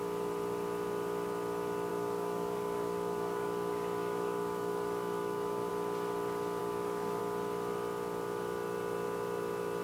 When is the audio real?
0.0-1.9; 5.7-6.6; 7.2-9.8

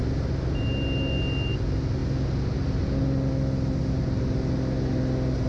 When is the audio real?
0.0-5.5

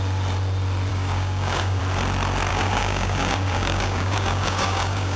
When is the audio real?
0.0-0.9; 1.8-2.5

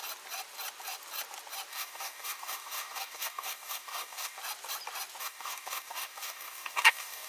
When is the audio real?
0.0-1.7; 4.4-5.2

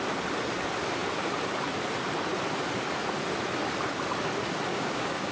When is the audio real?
0.0-4.7